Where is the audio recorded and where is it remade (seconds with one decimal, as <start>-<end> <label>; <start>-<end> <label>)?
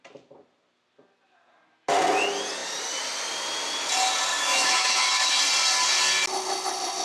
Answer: 0.0-4.3 recorded; 4.3-5.4 remade; 5.4-7.0 recorded